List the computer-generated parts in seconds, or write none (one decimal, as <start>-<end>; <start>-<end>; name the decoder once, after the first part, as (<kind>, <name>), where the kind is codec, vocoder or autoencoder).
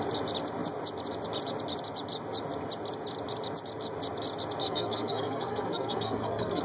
4.6-6.6 (codec, SNAC)